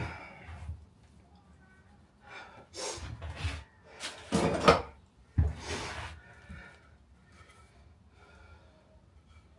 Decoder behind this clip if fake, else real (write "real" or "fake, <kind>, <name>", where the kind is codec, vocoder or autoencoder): real